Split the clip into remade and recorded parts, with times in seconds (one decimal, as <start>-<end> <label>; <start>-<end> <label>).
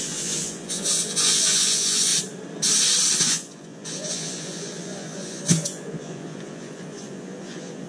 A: 0.0-2.1 remade; 2.1-3.2 recorded; 3.2-7.9 remade